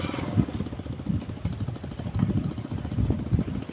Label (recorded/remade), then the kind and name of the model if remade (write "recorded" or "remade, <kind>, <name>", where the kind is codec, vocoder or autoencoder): recorded